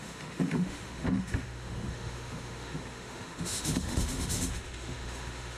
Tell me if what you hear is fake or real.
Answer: fake